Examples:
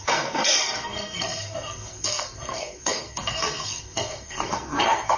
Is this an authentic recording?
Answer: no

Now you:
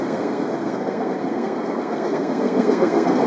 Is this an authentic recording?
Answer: no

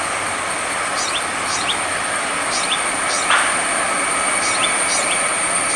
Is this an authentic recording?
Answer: yes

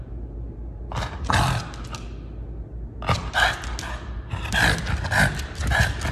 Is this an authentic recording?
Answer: yes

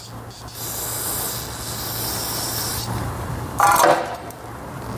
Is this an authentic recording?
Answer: yes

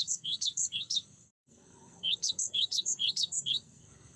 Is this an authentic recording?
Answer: no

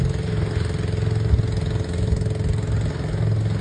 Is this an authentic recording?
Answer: yes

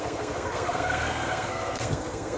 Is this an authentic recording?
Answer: no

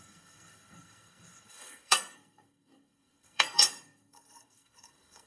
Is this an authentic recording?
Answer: no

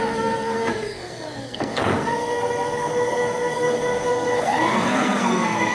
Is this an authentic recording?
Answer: no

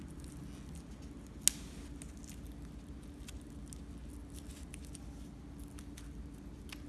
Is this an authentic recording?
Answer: yes